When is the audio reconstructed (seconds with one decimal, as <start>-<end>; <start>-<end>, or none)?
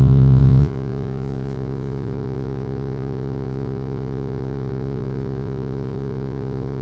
0.0-6.8